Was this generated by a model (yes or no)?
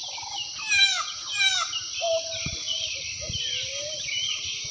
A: no